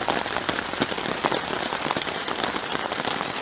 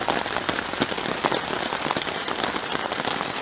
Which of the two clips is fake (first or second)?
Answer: first